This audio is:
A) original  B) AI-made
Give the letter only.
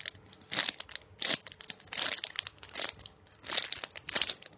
A